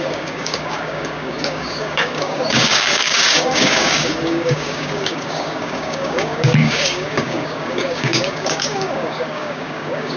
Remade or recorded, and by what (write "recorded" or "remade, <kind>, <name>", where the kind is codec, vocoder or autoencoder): remade, codec, DAC